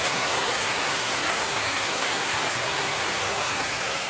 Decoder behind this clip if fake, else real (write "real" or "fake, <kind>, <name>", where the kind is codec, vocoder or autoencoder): fake, codec, SNAC